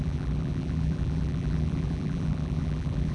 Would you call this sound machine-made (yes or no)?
yes